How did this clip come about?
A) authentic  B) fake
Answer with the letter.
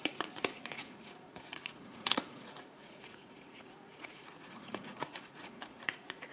B